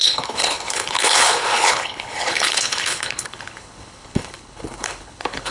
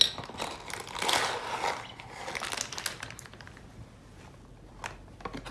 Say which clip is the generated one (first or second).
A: first